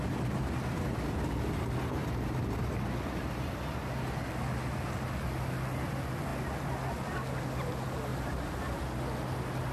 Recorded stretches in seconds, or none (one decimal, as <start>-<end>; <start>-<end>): 0.0-8.1; 8.8-9.7